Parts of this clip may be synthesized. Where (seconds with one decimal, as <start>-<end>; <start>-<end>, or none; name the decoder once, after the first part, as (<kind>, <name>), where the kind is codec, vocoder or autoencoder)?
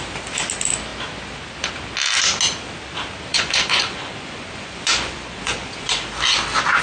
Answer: 3.3-6.0 (vocoder, Vocos)